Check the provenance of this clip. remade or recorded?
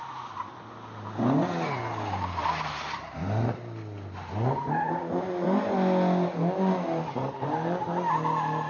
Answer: recorded